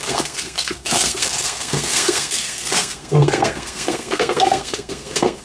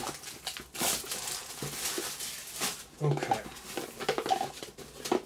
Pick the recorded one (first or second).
second